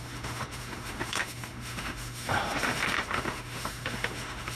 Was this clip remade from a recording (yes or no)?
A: yes